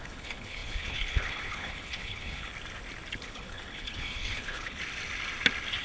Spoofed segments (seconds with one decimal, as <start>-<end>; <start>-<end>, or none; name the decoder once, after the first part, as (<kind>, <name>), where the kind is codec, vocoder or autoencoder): 0.0-2.5 (codec, HILCodec); 3.2-4.8